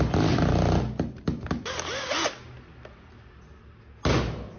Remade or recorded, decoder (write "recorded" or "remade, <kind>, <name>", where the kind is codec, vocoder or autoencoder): recorded